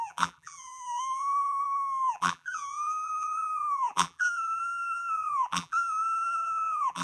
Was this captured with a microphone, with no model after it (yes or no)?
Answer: no